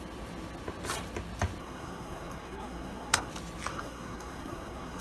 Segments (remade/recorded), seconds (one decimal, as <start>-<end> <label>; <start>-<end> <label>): 0.0-1.6 recorded; 1.6-3.3 remade; 3.3-3.7 recorded; 3.7-5.0 remade